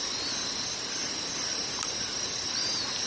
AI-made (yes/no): no